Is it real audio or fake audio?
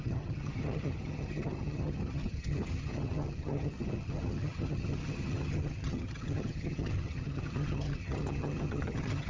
fake